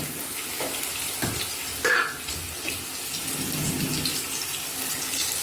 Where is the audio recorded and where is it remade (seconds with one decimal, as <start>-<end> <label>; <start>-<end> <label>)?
0.0-5.4 recorded